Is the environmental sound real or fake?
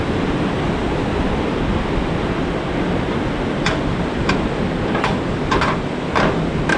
real